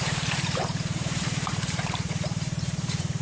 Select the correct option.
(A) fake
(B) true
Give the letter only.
A